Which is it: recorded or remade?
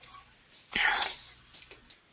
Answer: recorded